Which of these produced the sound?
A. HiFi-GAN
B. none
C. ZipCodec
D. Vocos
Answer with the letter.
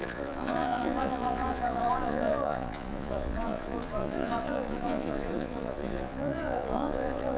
D